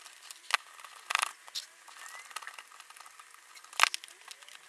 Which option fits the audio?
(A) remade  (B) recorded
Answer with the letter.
B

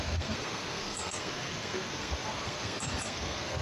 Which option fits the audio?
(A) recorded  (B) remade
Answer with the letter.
B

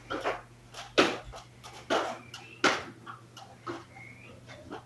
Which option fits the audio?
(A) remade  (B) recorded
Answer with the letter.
B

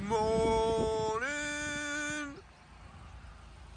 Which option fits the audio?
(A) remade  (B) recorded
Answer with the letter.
B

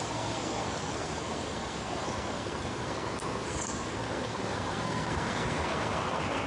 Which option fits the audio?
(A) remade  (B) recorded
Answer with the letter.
A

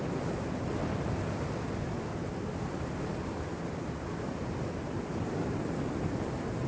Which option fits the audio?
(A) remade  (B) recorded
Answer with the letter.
B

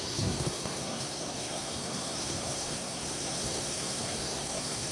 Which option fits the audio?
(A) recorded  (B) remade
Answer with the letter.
B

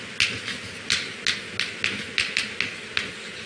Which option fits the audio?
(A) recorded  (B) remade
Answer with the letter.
A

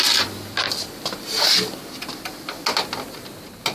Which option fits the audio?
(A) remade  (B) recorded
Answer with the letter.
B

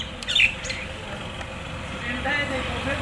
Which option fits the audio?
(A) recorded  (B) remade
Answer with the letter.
A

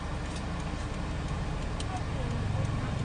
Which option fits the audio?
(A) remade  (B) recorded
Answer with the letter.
B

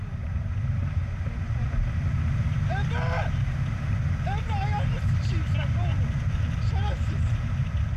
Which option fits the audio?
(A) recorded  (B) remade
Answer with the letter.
A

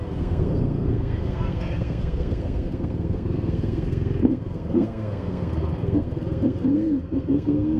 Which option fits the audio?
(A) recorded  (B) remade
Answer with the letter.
B